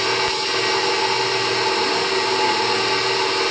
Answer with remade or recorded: recorded